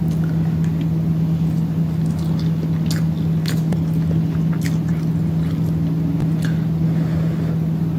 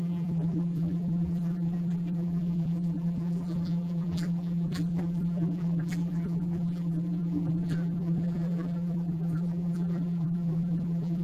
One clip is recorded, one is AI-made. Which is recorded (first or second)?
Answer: first